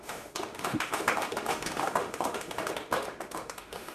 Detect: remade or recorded remade